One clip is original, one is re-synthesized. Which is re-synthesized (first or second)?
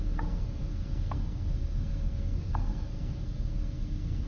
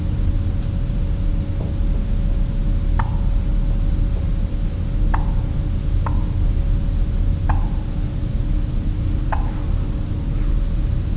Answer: first